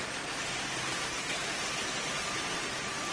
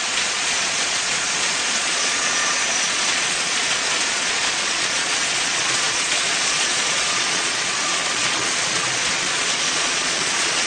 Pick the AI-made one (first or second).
second